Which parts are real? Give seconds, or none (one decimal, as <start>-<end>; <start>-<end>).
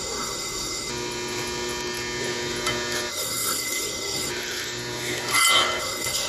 0.9-3.1; 4.3-5.8